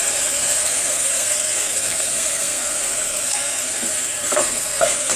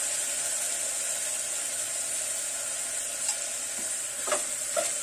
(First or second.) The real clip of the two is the second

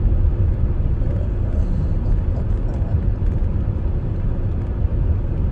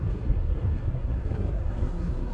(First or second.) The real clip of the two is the first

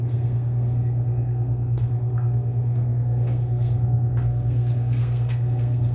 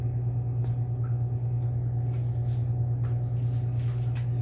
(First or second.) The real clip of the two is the second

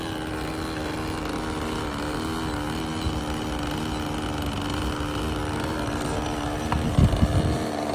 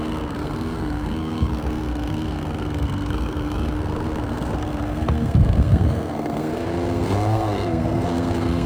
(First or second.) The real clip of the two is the first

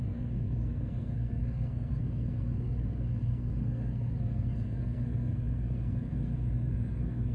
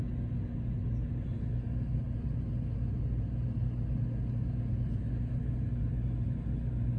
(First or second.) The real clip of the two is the second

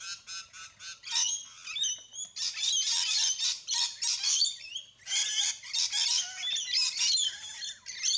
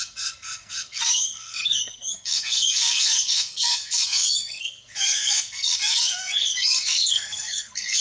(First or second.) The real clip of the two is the first